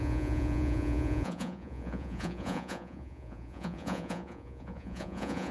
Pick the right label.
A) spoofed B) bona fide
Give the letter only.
A